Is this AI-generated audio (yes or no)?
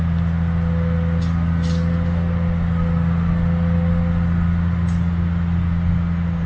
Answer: no